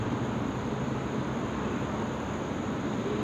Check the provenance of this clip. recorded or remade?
recorded